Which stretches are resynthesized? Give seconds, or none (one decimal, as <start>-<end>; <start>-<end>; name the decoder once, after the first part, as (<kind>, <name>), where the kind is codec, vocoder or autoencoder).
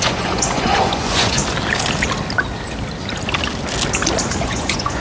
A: 0.0-1.4 (vocoder, Vocos); 4.4-5.0